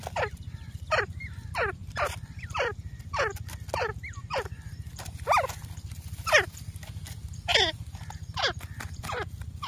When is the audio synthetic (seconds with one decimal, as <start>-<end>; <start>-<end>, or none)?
1.8-3.4